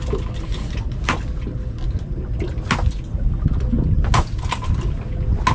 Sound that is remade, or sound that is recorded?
recorded